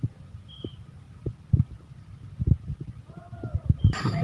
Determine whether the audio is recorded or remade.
recorded